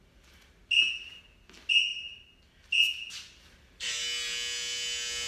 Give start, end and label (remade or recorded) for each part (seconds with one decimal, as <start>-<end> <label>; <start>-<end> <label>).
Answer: 0.0-5.3 recorded

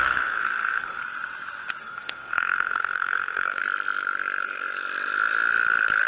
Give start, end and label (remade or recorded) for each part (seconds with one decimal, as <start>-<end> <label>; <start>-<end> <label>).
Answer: 0.0-1.0 remade; 1.0-1.8 recorded; 1.8-3.6 remade; 3.6-6.1 recorded